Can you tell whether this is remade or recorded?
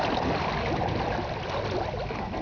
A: recorded